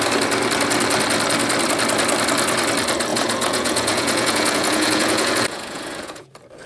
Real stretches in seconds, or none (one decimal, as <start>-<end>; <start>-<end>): 0.0-3.1; 6.3-6.7